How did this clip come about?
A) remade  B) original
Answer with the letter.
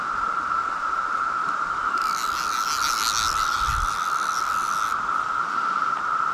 B